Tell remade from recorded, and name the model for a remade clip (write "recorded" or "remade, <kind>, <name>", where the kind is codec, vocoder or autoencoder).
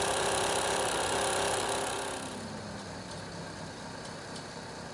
recorded